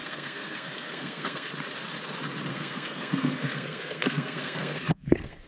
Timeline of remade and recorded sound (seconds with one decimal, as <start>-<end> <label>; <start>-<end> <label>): 0.0-1.5 remade; 1.5-2.5 recorded; 2.5-5.5 remade